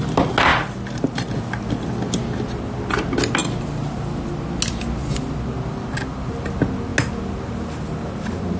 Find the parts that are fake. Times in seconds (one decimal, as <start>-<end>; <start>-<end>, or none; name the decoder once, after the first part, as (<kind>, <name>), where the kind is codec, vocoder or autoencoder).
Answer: 0.5-1.3 (vocoder, BigVGAN v2)

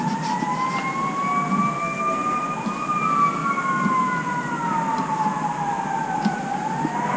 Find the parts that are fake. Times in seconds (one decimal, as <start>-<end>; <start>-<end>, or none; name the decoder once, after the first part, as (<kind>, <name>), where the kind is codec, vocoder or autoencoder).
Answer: 1.8-2.4 (codec, SNAC)

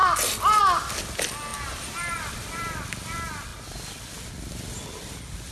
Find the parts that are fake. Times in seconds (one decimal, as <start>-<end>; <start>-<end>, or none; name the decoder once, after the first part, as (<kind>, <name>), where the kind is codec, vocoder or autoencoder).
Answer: 1.5-2.8 (vocoder, BigVGAN v2)

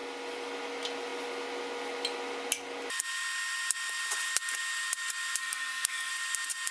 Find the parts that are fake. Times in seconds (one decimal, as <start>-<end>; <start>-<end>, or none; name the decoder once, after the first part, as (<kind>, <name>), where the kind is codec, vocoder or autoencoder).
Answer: 5.4-6.1 (codec, SNAC)

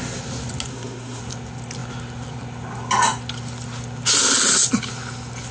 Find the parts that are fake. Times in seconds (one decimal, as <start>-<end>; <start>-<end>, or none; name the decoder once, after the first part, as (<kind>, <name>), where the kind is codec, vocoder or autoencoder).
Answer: 0.7-1.2 (codec, SNAC)

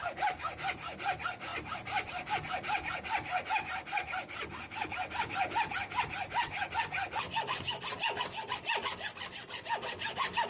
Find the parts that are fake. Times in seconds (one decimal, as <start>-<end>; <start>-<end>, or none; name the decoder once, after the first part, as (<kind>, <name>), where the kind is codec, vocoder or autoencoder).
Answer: none

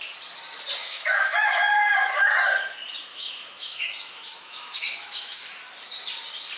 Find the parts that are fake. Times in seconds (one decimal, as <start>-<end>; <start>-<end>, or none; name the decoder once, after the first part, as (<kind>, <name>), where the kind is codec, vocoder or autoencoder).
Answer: 0.8-2.3 (autoencoder, DAC-VAE); 3.1-5.5

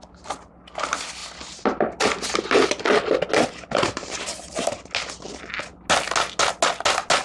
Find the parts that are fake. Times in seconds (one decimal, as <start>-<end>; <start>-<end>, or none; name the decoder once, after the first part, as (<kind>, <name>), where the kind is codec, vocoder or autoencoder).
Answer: none